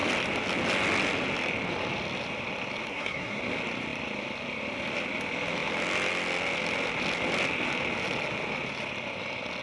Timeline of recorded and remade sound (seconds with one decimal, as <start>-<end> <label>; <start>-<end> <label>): 0.0-2.9 recorded; 2.9-3.4 remade; 3.4-9.6 recorded